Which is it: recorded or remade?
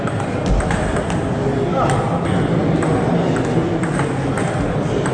recorded